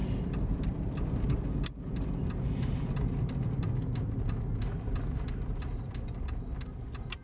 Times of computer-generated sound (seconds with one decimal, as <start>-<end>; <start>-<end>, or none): none